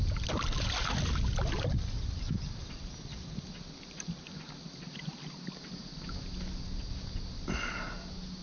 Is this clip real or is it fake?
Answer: real